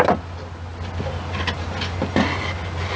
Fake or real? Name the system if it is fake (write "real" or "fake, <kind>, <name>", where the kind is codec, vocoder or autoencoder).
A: real